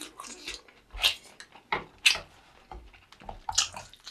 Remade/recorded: recorded